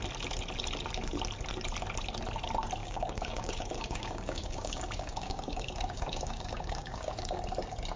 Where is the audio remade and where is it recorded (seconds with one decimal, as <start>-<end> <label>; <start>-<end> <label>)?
0.0-2.8 recorded; 2.8-7.4 remade; 7.4-8.0 recorded